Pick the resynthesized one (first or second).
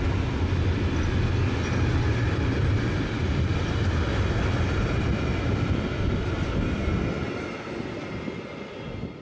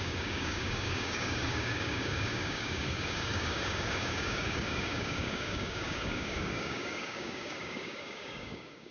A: second